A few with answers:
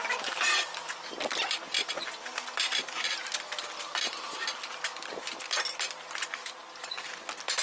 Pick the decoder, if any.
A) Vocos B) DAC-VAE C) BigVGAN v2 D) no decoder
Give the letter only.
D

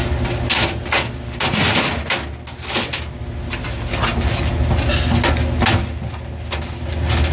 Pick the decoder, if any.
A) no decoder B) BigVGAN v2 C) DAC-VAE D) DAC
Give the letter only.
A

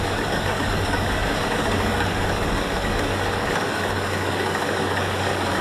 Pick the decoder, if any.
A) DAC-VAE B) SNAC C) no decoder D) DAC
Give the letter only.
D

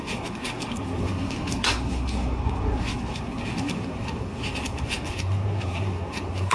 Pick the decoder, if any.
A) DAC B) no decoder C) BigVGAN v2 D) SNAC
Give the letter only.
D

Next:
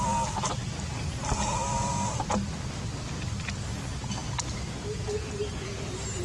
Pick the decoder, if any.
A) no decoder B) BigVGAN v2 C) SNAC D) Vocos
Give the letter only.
A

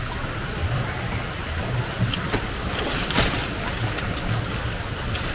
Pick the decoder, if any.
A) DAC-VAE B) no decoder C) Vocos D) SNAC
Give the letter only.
B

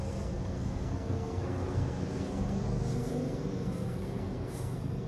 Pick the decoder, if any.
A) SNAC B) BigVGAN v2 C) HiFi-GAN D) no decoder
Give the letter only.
A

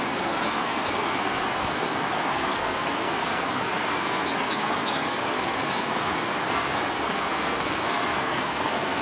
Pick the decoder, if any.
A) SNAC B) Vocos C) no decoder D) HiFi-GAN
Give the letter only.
A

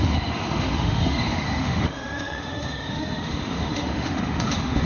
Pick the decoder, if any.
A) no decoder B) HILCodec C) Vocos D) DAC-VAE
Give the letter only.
D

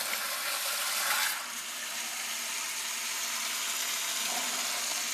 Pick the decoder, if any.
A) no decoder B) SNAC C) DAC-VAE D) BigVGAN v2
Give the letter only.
A